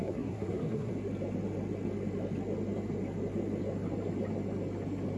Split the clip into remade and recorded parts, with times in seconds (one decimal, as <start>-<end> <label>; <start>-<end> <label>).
0.0-0.9 remade; 0.9-5.2 recorded